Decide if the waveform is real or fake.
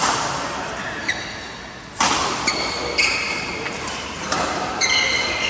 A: real